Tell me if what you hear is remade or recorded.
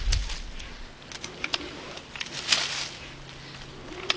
recorded